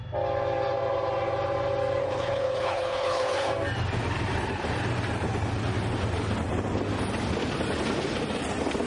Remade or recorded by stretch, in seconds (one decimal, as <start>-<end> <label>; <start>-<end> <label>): 0.0-2.0 recorded; 2.0-3.5 remade; 3.5-8.9 recorded